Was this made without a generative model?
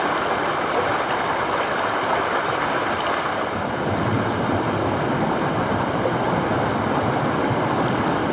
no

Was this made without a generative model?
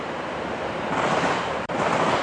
no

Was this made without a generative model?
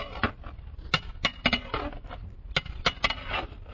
yes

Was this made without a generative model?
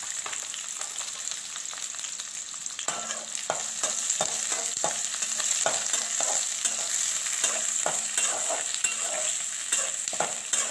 yes